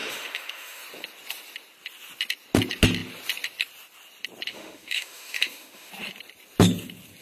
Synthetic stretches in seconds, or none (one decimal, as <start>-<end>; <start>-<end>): 0.0-0.8; 4.5-5.9

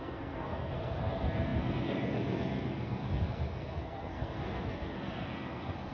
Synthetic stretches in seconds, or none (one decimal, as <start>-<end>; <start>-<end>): 0.0-5.9

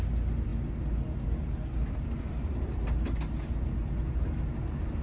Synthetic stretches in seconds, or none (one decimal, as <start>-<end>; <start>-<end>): none

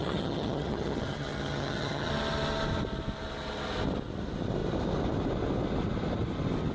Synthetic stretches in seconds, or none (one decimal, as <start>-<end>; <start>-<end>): 0.0-2.1

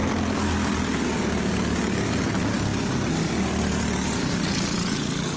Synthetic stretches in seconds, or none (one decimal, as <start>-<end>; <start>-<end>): none

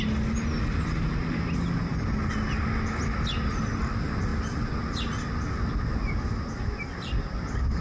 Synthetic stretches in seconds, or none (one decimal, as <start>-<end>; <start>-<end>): none

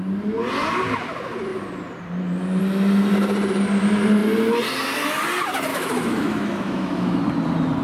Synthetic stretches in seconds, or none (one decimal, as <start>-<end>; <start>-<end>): 5.7-7.2